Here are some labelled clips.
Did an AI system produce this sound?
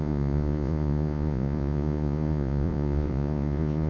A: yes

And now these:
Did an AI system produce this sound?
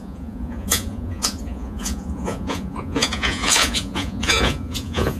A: yes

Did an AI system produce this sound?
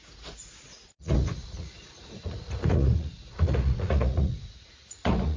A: yes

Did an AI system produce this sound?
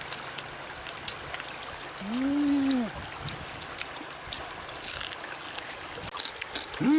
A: no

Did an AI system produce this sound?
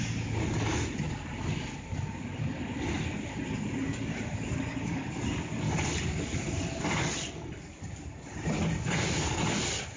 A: no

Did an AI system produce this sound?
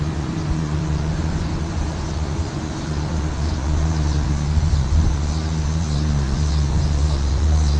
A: yes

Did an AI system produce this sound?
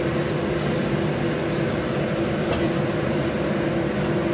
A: no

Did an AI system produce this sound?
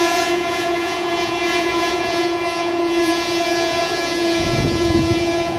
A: yes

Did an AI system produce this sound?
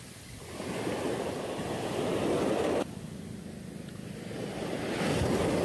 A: no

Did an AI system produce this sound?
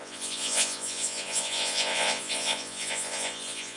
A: yes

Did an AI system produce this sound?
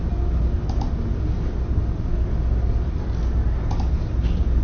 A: no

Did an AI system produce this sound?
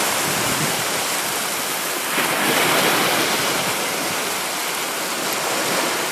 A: no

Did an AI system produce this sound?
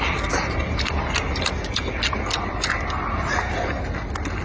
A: no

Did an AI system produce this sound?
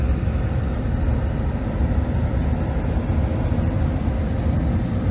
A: no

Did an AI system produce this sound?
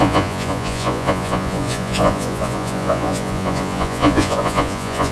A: yes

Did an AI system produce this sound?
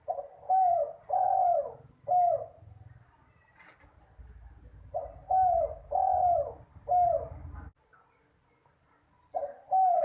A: no